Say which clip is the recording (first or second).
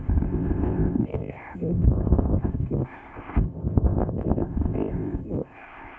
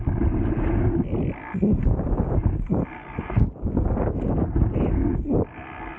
second